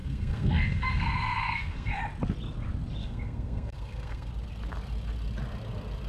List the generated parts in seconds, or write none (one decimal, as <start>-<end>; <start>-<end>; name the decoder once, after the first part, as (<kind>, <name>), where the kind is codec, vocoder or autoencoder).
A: 0.0-2.0 (codec, SNAC); 3.0-4.3